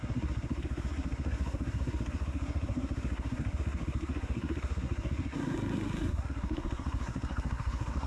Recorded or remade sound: remade